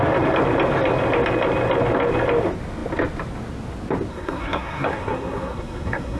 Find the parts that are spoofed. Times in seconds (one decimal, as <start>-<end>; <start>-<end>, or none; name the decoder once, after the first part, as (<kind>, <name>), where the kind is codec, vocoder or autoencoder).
4.1-6.2 (codec, SNAC)